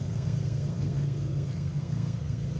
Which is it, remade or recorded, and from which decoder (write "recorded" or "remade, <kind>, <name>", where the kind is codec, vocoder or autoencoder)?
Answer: remade, codec, SNAC